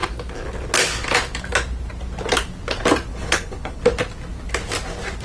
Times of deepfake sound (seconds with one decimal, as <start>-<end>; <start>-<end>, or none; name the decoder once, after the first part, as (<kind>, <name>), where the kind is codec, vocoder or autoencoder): 3.1-3.8 (codec, HILCodec)